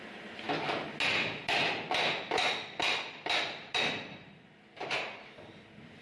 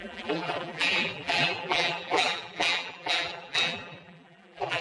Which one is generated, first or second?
second